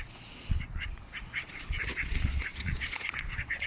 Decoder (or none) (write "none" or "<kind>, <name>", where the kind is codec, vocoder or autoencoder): vocoder, Vocos